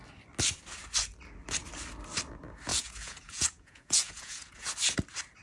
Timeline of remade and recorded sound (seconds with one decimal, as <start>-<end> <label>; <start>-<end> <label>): 0.0-2.7 recorded; 2.7-4.7 remade; 4.7-5.4 recorded